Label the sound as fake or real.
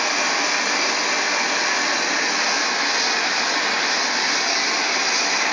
real